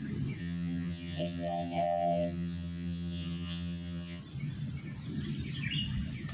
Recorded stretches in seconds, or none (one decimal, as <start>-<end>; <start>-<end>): 0.0-0.4; 4.2-6.3